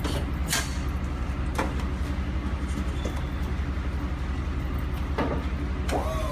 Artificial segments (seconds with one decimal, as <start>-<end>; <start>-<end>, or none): none